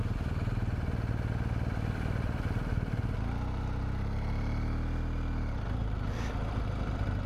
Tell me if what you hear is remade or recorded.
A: recorded